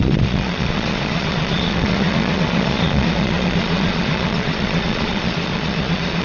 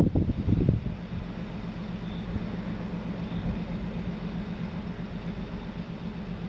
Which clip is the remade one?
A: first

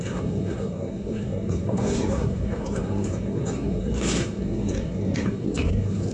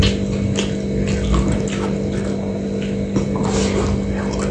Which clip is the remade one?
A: first